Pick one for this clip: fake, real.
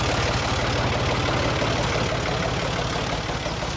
real